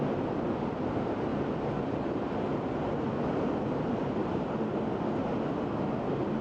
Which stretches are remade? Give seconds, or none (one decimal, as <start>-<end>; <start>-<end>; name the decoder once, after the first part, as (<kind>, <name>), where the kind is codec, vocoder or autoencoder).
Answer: none